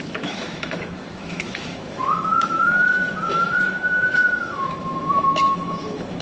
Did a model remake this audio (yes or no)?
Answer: yes